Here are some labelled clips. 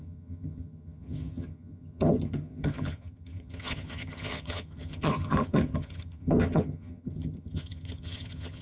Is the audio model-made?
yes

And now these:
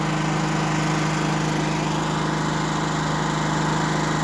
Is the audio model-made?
no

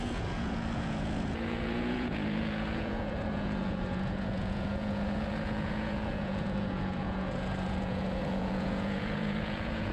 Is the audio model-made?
yes